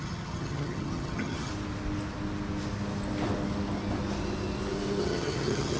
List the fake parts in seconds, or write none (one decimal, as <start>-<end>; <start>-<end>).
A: 0.0-1.5; 5.0-5.8